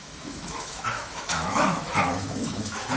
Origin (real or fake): fake